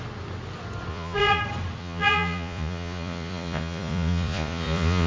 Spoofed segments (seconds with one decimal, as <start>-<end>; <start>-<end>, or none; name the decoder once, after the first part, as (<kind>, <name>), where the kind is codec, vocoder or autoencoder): 0.9-1.4 (vocoder, Vocos); 1.8-5.1